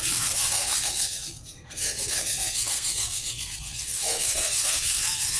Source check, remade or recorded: remade